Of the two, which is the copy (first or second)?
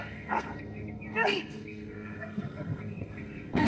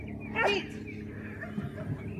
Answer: first